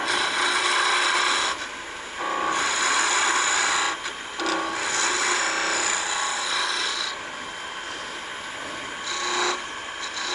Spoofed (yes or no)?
no